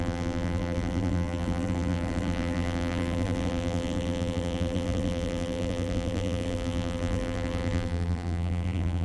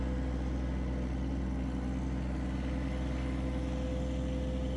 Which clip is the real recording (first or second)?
second